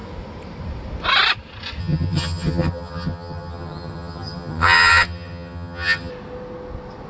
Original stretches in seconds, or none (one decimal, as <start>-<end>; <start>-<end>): 0.0-1.8; 6.1-7.1